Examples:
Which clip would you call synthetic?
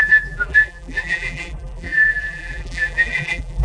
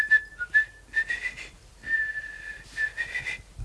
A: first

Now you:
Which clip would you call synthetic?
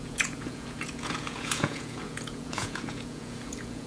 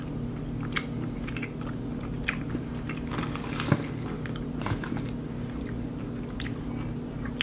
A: first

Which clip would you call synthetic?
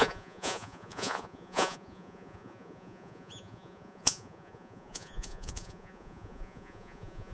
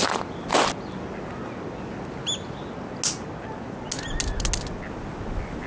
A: first